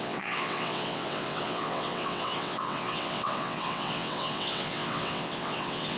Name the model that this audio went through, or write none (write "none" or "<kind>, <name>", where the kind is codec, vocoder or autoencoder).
vocoder, WaveNeXt